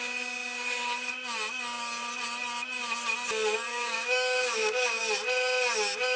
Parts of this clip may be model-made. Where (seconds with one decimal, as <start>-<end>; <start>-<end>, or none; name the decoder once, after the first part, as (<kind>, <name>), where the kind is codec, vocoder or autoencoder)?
3.7-5.0 (codec, DAC)